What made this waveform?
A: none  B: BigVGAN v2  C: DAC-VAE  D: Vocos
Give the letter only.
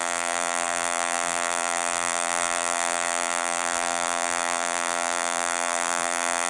B